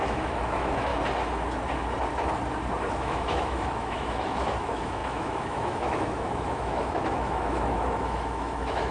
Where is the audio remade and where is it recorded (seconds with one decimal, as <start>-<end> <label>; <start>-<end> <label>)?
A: 0.0-0.9 remade; 0.9-2.9 recorded; 2.9-8.9 remade